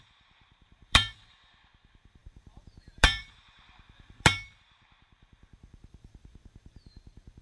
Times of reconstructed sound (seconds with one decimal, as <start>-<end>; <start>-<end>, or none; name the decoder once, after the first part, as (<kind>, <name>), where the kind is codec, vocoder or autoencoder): 0.0-7.4 (vocoder, BigVGAN v2)